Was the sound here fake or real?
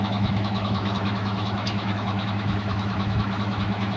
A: fake